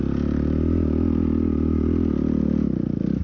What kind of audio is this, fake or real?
real